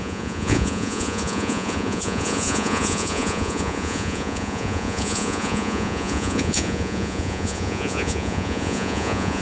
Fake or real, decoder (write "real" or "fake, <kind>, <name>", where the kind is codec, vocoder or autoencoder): fake, vocoder, Vocos